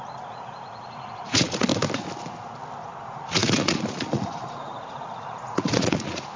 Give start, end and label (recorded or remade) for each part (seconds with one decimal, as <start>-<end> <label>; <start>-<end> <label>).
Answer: 0.0-1.7 remade; 1.7-3.1 recorded; 3.1-6.4 remade